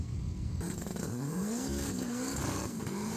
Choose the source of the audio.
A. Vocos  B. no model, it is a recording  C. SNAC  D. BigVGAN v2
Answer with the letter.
C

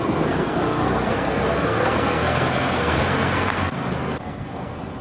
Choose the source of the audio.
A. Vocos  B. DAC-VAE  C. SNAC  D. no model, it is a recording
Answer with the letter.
C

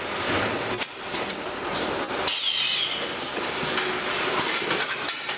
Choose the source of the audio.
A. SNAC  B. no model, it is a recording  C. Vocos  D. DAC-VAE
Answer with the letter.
B